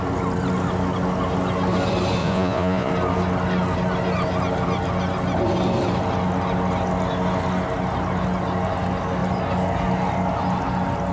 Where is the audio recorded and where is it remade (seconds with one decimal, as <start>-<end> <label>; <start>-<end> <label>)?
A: 0.0-2.2 recorded; 2.2-2.9 remade; 2.9-11.1 recorded